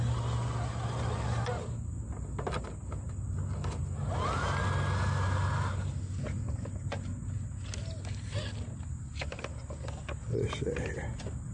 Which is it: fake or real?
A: real